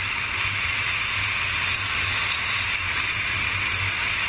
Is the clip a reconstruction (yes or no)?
no